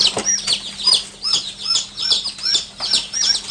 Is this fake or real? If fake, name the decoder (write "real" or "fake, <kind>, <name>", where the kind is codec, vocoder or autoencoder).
real